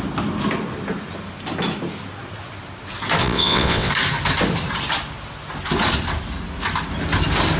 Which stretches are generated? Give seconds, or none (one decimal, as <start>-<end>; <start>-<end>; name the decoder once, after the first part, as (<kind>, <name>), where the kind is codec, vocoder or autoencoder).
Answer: 3.2-3.9 (vocoder, WaveNeXt)